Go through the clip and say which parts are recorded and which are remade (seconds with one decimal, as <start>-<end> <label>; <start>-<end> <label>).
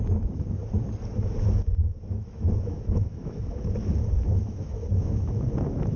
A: 0.0-0.6 remade; 0.6-2.1 recorded; 2.1-6.0 remade